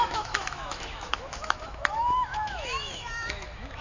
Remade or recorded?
remade